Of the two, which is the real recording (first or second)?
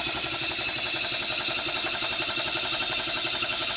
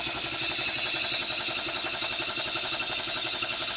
second